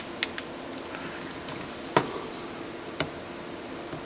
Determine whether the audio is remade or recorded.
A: recorded